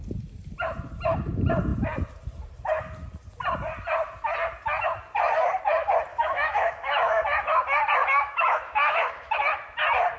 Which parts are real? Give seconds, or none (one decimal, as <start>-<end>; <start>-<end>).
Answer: 0.0-6.1; 7.2-8.0; 9.3-10.2